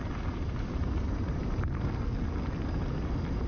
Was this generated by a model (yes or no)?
no